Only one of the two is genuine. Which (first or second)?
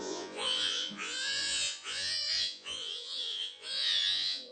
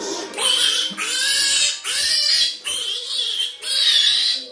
second